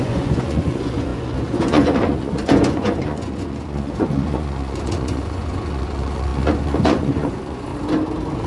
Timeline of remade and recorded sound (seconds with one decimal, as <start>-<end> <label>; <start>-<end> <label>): 0.0-7.7 remade; 7.7-8.5 recorded